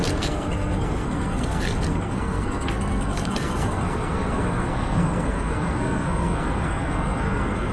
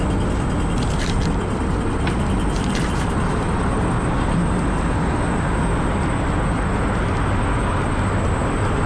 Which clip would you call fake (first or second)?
first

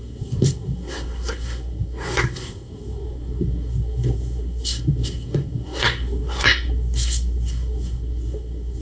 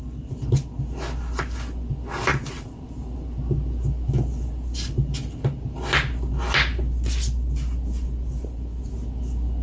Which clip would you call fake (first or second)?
first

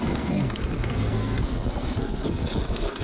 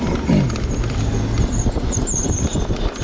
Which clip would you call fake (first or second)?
first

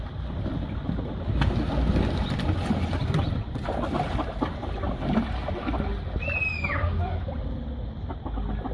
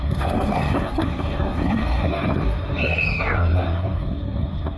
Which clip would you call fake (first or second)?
second